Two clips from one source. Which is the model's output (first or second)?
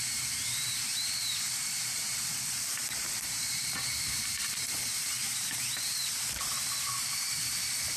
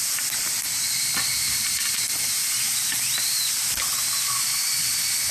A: first